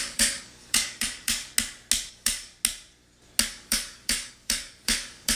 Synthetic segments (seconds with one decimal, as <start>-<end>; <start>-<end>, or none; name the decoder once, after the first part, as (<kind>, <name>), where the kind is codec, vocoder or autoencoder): 0.0-1.5 (codec, DAC); 2.1-2.5; 3.5-5.3